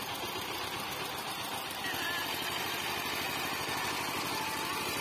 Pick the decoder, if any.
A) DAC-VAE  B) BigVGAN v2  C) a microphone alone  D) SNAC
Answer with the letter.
C